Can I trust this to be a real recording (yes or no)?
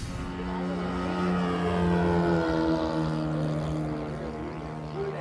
yes